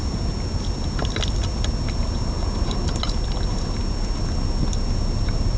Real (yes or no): yes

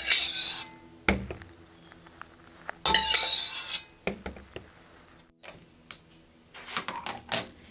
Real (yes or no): yes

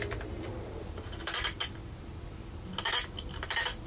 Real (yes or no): yes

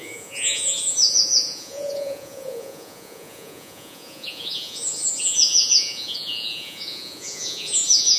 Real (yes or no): no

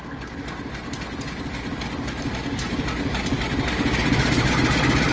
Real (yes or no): yes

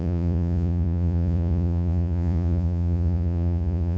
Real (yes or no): no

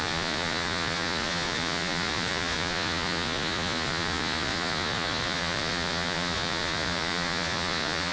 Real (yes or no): no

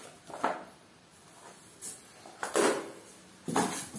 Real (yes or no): yes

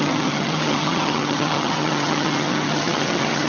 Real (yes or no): no